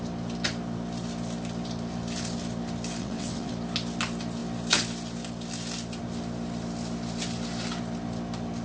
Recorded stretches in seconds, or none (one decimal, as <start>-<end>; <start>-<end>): 0.0-3.0; 3.5-8.6